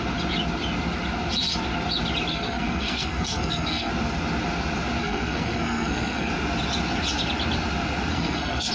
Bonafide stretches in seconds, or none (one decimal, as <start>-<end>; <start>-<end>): 0.0-2.3; 3.9-5.0; 6.3-8.1